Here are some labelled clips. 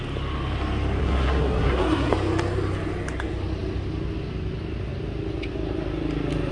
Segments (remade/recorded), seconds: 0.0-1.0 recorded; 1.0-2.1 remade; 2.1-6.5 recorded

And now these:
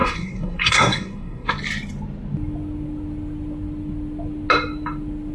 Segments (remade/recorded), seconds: 0.0-1.5 remade; 1.5-5.3 recorded

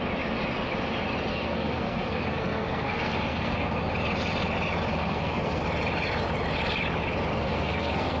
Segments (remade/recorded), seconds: 0.0-1.3 recorded; 1.3-3.8 remade; 3.8-4.9 recorded; 4.9-5.6 remade; 5.6-7.3 recorded; 7.3-8.2 remade

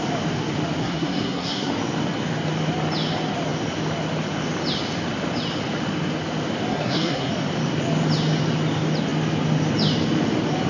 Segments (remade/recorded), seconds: 0.0-0.8 recorded; 0.8-1.7 remade; 1.7-6.7 recorded; 6.7-7.3 remade; 7.3-10.7 recorded

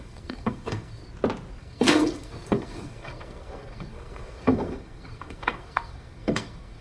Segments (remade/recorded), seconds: 0.0-1.0 remade; 1.0-1.6 recorded; 1.6-6.8 remade

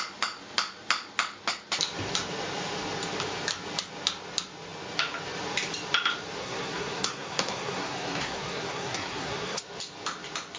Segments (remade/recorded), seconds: 0.0-6.4 recorded; 6.4-9.6 remade; 9.6-10.6 recorded